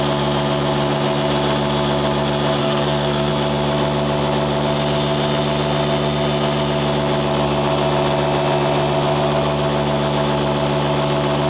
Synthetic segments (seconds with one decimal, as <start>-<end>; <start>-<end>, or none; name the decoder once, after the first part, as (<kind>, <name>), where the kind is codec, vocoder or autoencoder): 2.6-3.3 (codec, SNAC)